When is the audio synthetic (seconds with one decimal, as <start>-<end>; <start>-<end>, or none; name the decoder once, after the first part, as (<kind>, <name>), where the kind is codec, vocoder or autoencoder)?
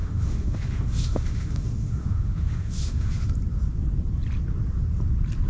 0.0-3.3 (autoencoder, DAC-VAE)